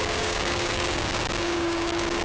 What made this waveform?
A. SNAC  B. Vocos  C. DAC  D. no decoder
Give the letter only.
C